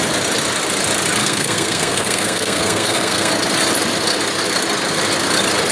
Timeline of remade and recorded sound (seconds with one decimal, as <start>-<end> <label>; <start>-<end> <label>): 0.0-1.2 recorded; 1.2-3.3 remade; 3.3-5.7 recorded